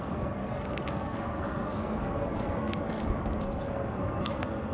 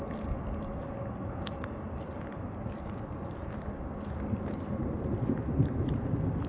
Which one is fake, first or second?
first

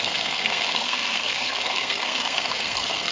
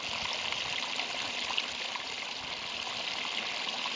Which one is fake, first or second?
first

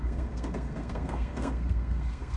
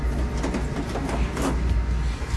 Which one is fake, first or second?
first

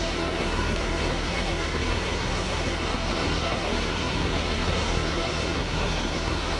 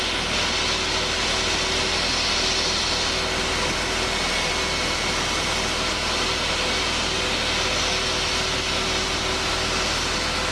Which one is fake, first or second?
first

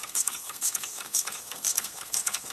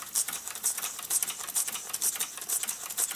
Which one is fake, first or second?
first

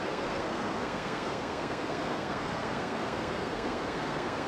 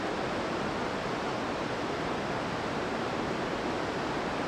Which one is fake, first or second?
first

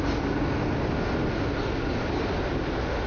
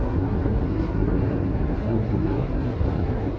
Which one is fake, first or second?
second